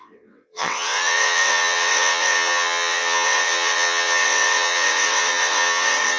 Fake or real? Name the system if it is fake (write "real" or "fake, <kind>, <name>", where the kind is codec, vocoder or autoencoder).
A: fake, vocoder, WaveNeXt